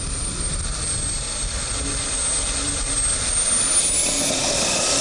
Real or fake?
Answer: real